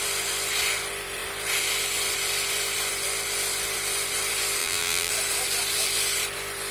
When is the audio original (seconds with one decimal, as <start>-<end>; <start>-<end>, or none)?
0.0-4.6; 5.1-6.7